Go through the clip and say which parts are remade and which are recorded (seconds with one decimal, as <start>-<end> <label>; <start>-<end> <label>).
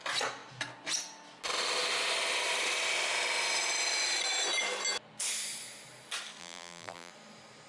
0.0-6.4 recorded; 6.4-7.1 remade; 7.1-7.7 recorded